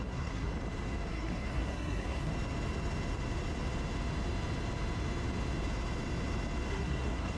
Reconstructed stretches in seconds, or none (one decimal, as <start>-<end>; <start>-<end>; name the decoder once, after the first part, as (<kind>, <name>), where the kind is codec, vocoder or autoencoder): 0.0-0.5 (codec, SNAC); 1.1-2.3; 6.7-7.4